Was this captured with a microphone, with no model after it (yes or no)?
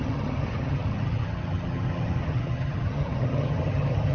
no